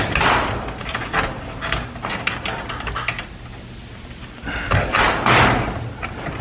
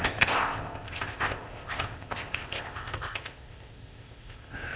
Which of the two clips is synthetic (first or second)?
second